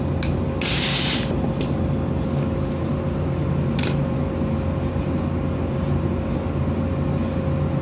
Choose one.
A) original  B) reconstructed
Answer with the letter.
A